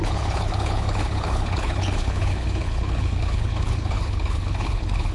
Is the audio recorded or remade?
remade